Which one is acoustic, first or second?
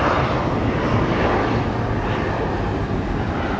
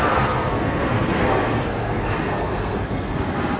first